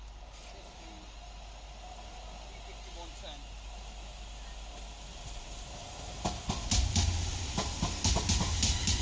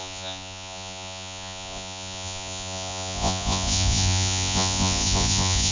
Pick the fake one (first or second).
second